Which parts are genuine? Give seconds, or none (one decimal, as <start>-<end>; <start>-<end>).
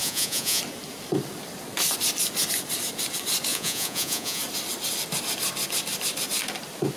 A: 0.6-3.5; 4.4-7.0